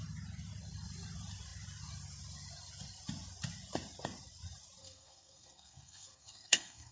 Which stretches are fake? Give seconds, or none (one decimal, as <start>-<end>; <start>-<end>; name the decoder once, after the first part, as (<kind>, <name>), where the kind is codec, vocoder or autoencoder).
4.8-6.9 (codec, SNAC)